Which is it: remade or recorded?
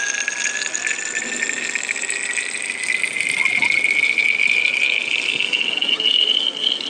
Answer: recorded